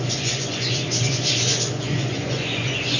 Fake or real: fake